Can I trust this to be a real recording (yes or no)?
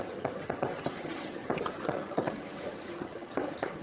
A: no